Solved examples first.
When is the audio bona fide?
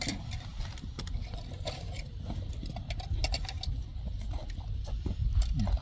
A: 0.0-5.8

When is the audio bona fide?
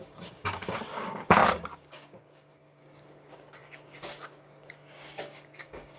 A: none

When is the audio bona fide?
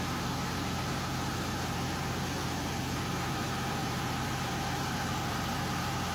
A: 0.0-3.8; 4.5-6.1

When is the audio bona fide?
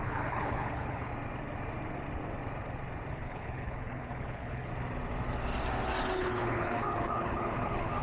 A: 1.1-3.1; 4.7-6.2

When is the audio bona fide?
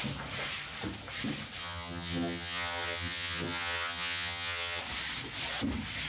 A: 0.0-1.6; 4.8-6.1